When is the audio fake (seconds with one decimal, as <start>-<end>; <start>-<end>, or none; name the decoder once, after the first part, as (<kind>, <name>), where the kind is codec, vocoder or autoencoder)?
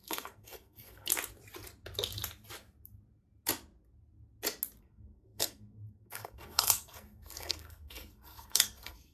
0.0-1.1 (codec, SNAC); 4.8-9.1